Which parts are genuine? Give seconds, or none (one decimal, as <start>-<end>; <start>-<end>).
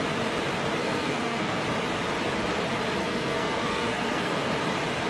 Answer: 0.0-0.8; 1.6-3.0; 4.5-5.1